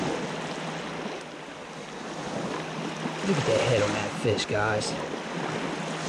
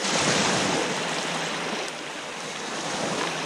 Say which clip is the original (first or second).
first